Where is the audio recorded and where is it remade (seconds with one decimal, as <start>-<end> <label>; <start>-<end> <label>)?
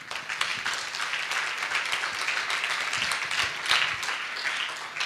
0.0-5.1 recorded